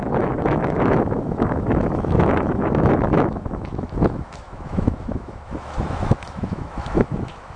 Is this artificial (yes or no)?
yes